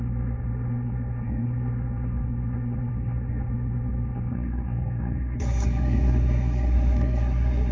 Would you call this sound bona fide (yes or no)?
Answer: no